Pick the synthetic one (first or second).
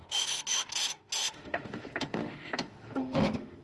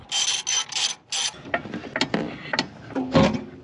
first